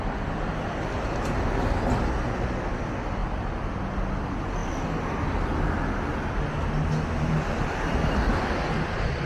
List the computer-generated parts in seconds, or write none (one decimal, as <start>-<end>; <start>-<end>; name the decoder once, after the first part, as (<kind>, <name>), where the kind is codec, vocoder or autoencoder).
none